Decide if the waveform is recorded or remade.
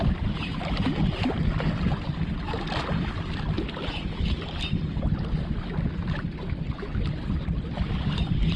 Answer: recorded